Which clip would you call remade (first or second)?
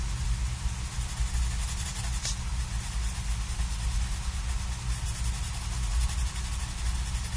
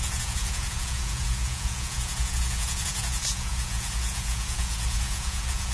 second